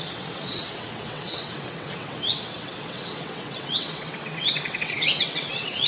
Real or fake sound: fake